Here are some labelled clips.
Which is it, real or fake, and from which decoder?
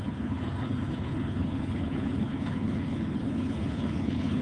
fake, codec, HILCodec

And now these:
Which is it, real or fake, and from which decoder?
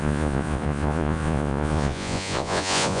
fake, vocoder, Vocos